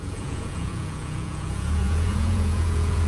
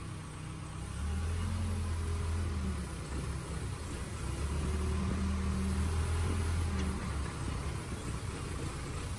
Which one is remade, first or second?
first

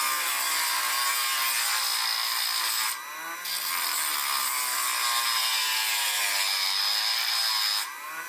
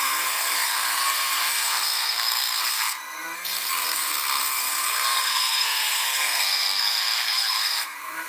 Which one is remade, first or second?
second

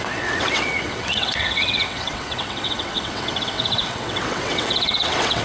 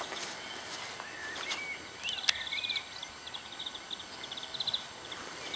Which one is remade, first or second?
first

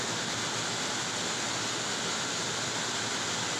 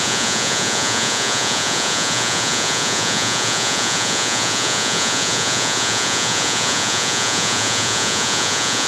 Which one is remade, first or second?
second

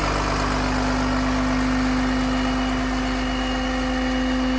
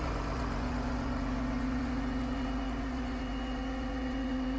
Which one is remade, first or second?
second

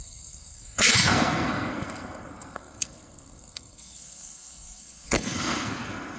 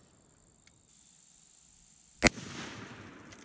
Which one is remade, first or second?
first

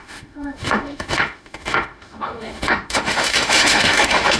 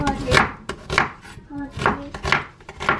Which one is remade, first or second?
first